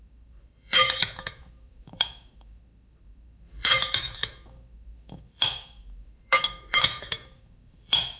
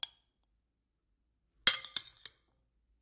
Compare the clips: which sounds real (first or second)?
second